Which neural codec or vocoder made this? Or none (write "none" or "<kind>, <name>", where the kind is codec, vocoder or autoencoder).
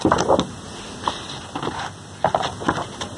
none